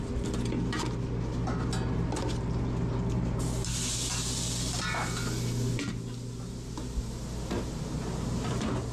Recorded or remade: recorded